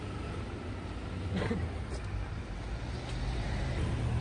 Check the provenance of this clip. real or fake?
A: real